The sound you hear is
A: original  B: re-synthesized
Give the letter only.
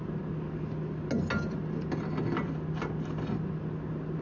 A